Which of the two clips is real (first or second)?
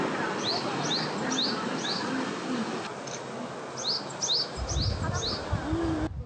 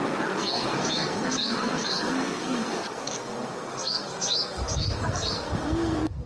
first